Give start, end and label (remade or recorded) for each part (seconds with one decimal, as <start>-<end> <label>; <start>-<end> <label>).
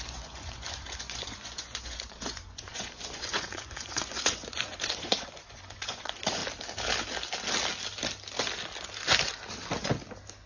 0.0-6.4 remade; 6.4-10.5 recorded